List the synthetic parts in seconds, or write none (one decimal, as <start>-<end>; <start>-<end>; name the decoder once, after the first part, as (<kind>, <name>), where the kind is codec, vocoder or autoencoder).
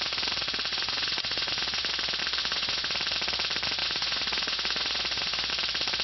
0.7-1.9 (vocoder, Vocos); 2.4-3.0; 3.8-5.5